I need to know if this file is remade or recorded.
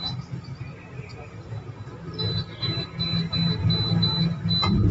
recorded